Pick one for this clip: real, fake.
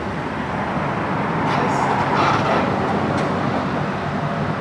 real